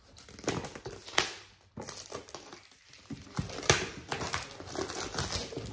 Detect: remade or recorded recorded